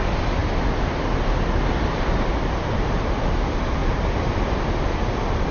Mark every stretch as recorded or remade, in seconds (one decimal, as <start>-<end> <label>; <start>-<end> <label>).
0.0-5.5 recorded